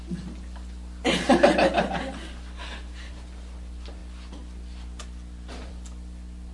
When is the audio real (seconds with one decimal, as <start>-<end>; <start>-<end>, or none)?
0.0-6.5